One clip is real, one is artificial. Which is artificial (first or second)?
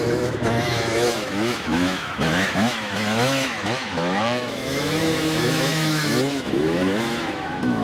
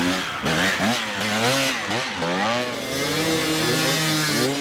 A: first